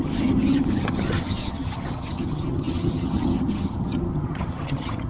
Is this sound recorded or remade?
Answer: remade